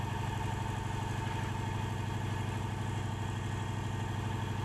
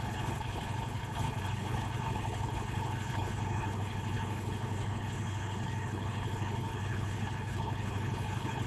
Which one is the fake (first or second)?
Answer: second